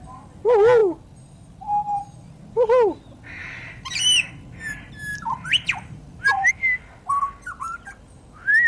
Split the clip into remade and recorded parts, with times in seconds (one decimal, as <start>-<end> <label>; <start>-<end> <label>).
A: 0.0-3.4 recorded; 3.4-4.3 remade; 4.3-5.1 recorded; 5.1-6.5 remade; 6.5-8.7 recorded